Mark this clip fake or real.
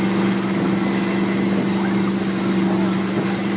real